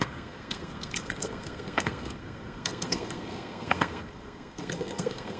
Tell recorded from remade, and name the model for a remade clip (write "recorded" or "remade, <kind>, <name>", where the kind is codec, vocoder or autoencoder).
remade, codec, SNAC